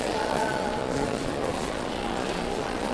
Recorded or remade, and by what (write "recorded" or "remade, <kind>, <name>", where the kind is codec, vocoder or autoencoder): remade, vocoder, Vocos